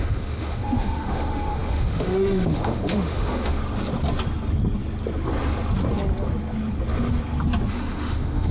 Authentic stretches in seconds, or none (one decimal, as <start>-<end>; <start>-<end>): 3.6-7.7

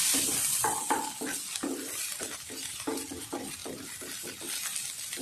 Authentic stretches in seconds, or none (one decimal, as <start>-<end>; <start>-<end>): 0.0-5.2